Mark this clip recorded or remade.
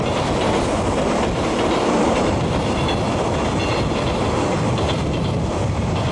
recorded